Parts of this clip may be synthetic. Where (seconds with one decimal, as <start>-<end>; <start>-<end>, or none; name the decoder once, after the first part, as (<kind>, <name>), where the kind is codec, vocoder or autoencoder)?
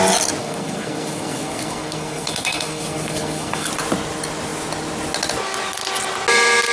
0.4-3.7 (codec, SNAC)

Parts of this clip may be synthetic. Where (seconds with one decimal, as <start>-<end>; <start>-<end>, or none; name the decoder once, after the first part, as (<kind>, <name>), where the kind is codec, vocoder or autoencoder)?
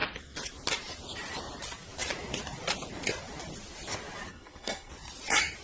4.3-4.9 (codec, SNAC)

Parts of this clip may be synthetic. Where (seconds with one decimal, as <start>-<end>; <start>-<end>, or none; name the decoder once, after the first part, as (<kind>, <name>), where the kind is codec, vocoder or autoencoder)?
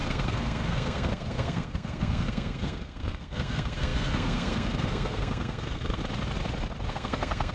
0.0-6.0 (codec, SNAC); 6.9-7.5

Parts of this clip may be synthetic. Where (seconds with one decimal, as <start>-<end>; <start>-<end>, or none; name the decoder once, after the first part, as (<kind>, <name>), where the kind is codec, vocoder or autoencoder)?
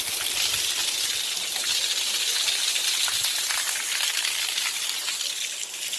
none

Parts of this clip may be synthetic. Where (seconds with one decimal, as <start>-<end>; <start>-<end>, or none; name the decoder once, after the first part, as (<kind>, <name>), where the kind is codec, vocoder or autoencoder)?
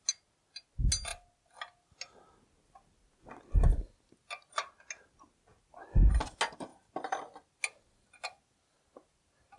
none